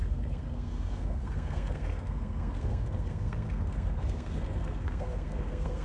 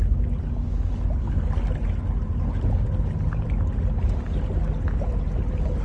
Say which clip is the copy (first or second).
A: first